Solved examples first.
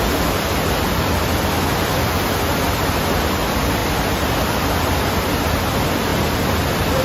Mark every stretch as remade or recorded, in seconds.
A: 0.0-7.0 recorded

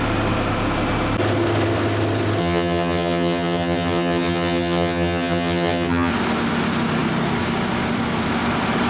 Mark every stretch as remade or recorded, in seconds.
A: 0.0-2.4 recorded; 2.4-6.1 remade; 6.1-8.9 recorded

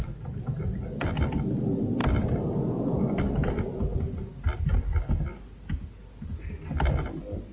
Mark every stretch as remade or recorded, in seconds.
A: 0.0-2.0 remade; 2.0-3.2 recorded; 3.2-3.9 remade; 3.9-6.8 recorded; 6.8-7.5 remade

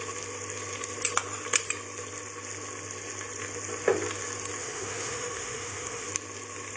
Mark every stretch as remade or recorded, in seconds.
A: 0.0-4.6 recorded; 4.6-6.1 remade; 6.1-6.8 recorded

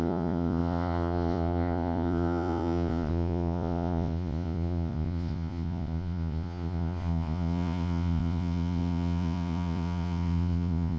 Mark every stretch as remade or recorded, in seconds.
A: 0.0-11.0 remade

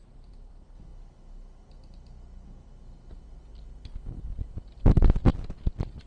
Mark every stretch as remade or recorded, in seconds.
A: 0.0-0.9 remade; 0.9-4.6 recorded; 4.6-5.3 remade; 5.3-6.1 recorded

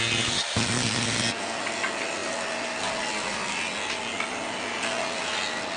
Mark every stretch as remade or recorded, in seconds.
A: 0.0-5.8 recorded

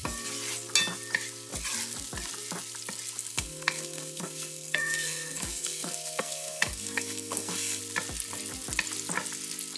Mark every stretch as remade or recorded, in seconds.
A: 0.0-3.3 recorded; 3.3-7.8 remade; 7.8-9.8 recorded